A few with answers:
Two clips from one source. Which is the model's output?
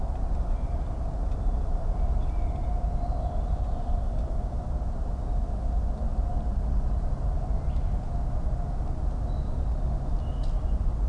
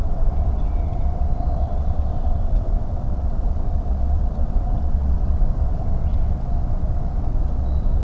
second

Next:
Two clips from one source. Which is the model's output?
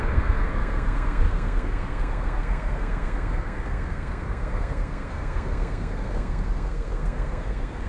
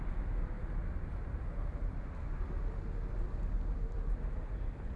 first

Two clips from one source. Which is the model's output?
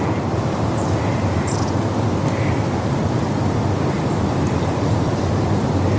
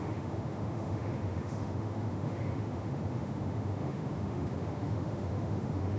second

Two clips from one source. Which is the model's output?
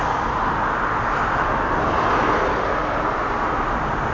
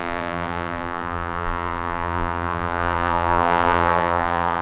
second